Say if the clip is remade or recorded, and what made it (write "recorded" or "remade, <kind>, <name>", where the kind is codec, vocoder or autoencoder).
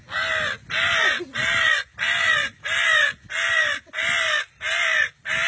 recorded